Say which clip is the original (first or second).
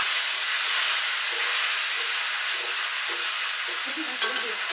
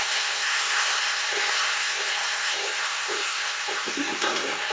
first